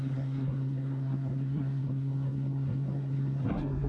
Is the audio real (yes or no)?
no